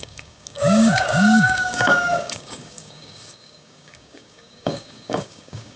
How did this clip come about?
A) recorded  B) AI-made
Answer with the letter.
B